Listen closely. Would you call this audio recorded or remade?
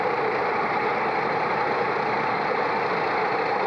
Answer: recorded